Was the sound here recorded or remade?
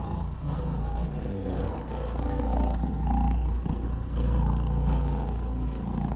remade